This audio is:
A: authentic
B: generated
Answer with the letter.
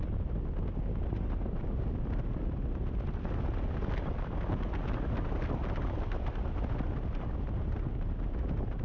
A